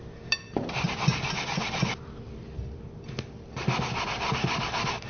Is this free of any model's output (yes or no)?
yes